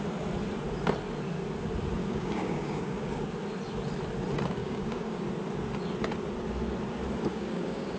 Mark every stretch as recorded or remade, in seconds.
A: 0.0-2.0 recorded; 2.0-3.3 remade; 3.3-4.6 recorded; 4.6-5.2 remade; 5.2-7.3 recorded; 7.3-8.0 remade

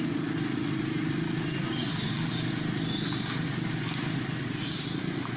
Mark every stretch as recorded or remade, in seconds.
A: 0.0-5.4 recorded

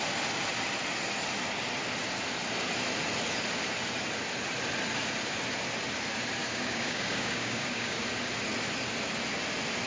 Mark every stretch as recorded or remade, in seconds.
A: 0.0-6.4 recorded; 6.4-8.0 remade; 8.0-9.9 recorded

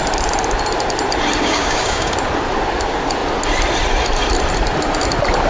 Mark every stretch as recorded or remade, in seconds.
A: 0.0-1.4 recorded; 1.4-2.1 remade; 2.1-5.5 recorded

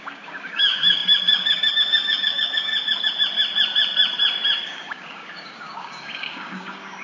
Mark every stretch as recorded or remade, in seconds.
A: 0.0-2.7 remade; 2.7-4.6 recorded; 4.6-7.0 remade

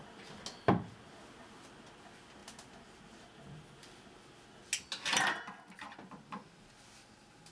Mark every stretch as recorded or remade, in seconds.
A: 0.0-7.5 recorded